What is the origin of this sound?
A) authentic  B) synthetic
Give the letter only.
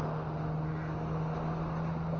A